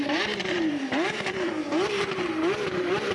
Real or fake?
fake